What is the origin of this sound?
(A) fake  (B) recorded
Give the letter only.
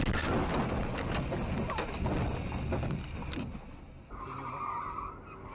B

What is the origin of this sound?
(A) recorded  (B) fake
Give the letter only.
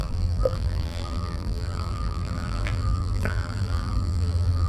B